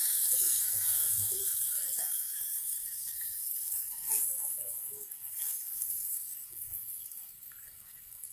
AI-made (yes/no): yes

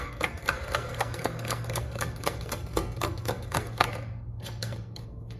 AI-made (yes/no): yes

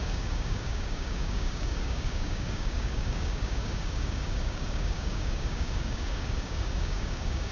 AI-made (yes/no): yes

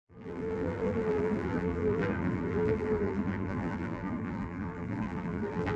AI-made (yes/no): yes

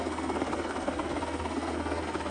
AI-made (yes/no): yes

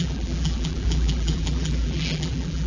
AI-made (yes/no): yes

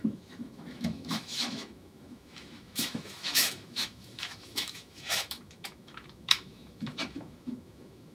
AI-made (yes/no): yes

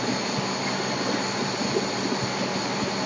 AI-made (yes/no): no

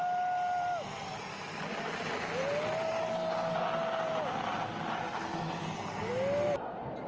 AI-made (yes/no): no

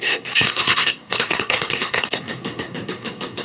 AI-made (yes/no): yes